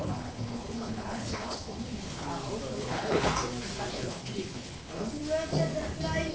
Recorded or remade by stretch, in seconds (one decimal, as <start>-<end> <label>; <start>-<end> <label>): 0.0-2.3 remade; 2.3-2.8 recorded; 2.8-3.3 remade; 3.3-3.9 recorded; 3.9-5.2 remade; 5.2-6.3 recorded